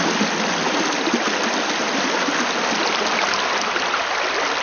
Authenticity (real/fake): real